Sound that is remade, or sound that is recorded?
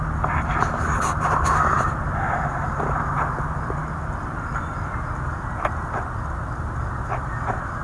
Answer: remade